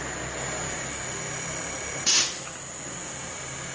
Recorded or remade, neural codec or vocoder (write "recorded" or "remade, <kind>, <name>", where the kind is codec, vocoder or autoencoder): recorded